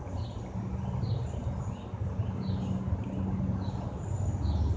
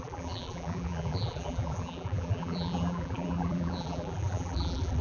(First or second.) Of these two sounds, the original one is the first